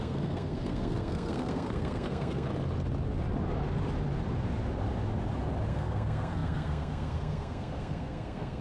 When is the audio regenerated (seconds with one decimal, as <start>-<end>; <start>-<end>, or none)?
0.0-2.5; 5.7-8.6